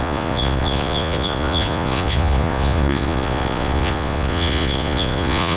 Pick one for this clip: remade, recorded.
remade